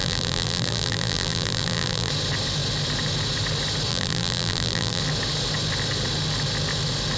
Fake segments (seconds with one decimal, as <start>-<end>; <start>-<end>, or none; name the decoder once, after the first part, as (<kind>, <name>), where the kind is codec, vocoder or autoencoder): 0.0-2.1 (vocoder, BigVGAN v2); 3.9-5.0